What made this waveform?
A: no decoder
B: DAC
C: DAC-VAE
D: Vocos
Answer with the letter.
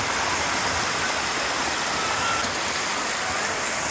A